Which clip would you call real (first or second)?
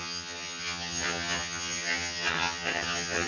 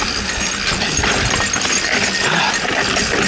second